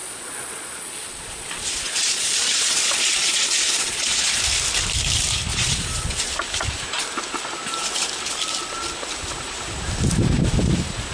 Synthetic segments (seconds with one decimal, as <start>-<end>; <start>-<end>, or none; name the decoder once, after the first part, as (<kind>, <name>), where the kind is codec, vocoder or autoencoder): 0.0-4.4 (vocoder, Vocos); 5.5-6.3